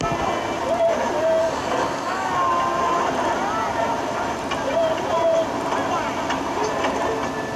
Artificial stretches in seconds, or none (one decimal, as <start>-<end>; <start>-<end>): 1.4-2.3